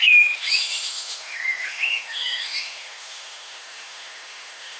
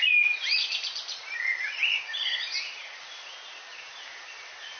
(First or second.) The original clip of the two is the second